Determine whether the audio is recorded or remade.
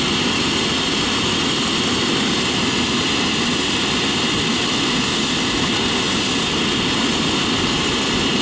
recorded